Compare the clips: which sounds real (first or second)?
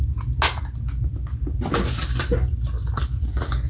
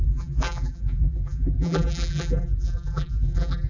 first